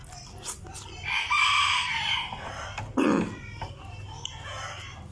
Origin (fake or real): real